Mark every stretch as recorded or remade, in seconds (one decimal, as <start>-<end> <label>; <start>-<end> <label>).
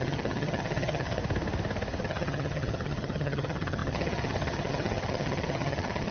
0.0-1.2 remade; 1.2-2.0 recorded; 2.0-6.1 remade